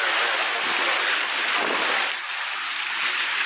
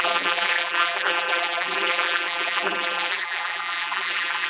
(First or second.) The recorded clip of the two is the first